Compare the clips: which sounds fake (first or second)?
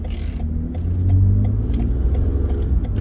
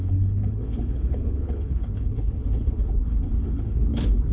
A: second